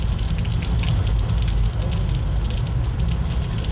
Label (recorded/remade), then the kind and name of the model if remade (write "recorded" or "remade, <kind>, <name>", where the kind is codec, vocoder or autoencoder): recorded